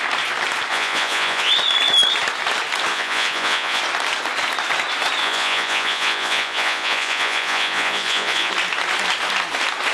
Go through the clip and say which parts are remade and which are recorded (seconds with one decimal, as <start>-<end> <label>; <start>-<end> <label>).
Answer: 0.0-0.7 recorded; 0.7-1.5 remade; 1.5-2.9 recorded; 2.9-3.8 remade; 3.8-5.2 recorded; 5.2-8.5 remade; 8.5-9.9 recorded